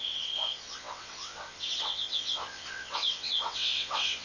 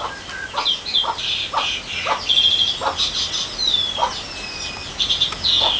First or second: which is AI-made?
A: first